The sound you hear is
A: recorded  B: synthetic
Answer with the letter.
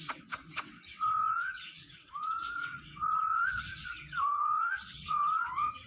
B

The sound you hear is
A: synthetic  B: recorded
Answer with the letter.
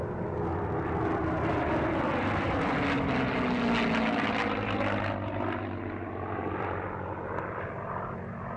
B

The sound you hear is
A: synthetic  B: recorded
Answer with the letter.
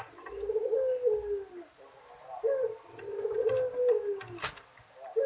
B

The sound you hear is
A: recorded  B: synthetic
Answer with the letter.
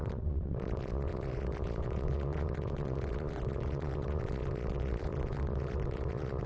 B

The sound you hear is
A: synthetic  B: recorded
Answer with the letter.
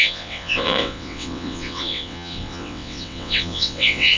A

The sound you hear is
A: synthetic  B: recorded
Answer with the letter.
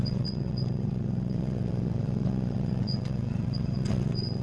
A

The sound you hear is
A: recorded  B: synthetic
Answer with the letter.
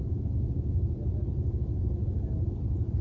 A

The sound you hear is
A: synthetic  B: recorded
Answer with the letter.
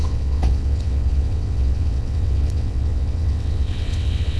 A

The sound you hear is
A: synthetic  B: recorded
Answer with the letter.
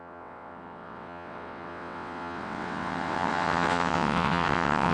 A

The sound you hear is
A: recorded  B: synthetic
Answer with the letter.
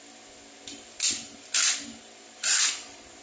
A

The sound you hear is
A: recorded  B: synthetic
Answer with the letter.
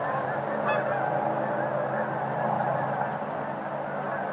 A